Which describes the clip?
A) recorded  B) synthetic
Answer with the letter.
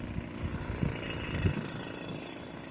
A